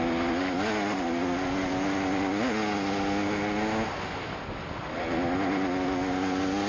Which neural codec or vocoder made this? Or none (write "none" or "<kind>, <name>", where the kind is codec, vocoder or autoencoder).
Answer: none